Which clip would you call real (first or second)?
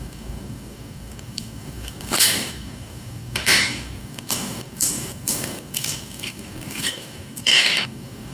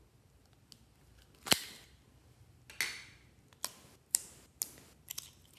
second